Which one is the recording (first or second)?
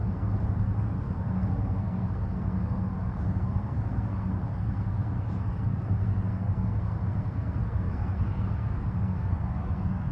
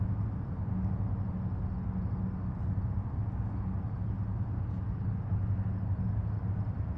second